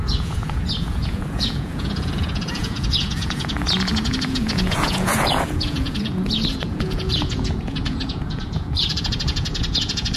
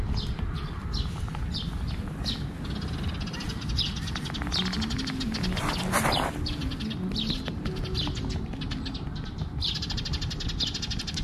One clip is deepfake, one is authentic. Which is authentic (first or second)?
second